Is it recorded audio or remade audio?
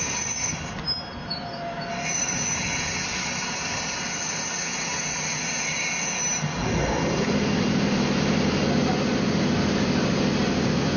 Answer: recorded